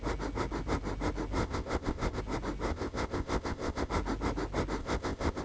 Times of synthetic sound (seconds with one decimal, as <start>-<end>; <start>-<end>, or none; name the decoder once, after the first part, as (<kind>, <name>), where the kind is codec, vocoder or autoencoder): 1.4-2.2 (codec, ZipCodec); 2.7-3.9; 4.8-5.4